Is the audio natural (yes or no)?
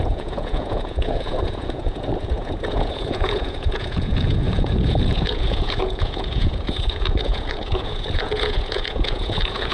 no